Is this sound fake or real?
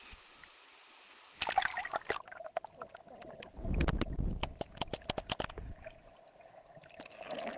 real